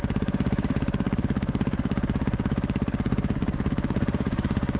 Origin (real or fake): fake